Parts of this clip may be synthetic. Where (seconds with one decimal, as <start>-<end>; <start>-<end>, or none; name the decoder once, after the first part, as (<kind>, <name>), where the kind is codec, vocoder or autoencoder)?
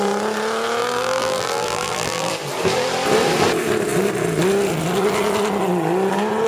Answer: 0.8-2.3 (vocoder, BigVGAN v2)